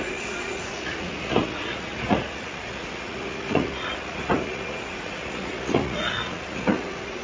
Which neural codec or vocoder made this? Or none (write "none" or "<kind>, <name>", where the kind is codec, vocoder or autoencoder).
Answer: vocoder, Vocos